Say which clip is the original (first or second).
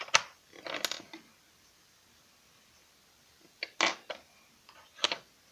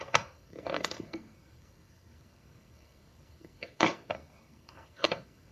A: first